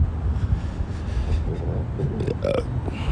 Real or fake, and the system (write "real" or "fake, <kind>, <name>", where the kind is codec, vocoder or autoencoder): real